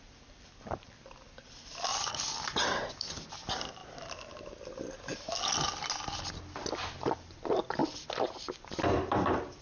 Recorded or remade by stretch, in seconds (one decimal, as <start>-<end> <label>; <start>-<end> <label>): 0.0-1.9 remade; 1.9-3.0 recorded; 3.0-3.8 remade; 3.8-7.1 recorded; 7.1-9.6 remade